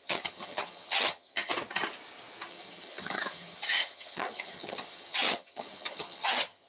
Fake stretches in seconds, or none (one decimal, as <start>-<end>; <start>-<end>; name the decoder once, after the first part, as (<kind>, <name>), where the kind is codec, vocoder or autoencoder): 0.0-1.5 (vocoder, HiFi-GAN); 2.5-6.7